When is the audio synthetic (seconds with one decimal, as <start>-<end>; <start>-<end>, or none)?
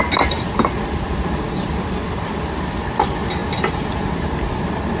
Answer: 0.0-3.4; 4.6-5.0